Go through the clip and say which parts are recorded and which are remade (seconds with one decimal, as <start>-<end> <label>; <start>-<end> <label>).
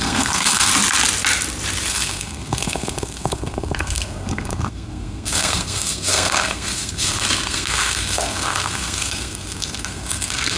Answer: 0.0-0.7 remade; 0.7-1.9 recorded; 1.9-10.6 remade